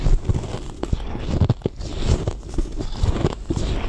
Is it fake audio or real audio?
real